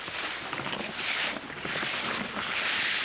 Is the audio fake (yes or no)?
no